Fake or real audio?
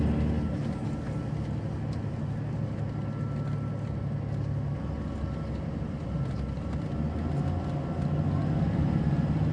real